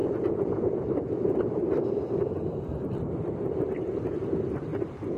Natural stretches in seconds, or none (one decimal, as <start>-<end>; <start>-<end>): 4.7-5.2